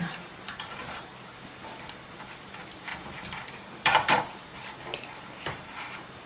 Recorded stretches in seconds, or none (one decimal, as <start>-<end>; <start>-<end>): 1.1-2.1; 2.9-3.5; 4.9-5.4